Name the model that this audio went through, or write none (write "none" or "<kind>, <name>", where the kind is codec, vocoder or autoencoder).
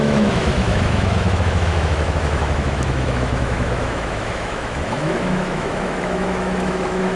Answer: autoencoder, DAC-VAE